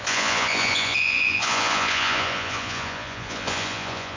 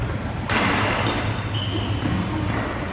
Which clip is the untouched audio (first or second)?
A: second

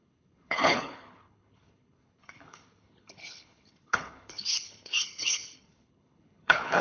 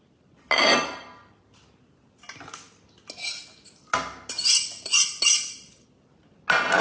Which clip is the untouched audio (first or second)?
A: second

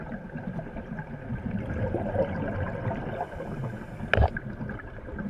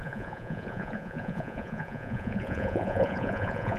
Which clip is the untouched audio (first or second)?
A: first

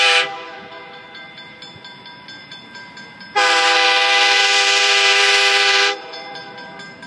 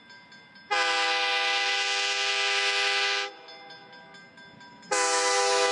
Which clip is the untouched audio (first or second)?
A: second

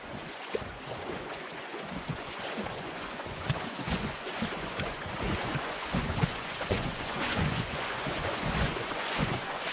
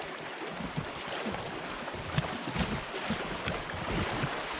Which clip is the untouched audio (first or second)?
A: second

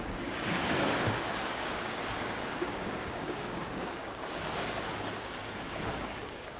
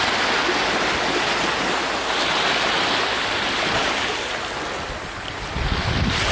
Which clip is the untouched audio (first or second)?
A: second